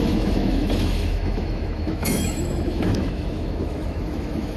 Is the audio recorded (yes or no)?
no